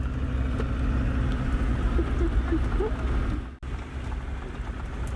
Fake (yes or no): no